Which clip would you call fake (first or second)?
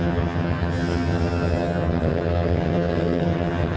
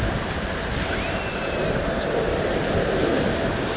first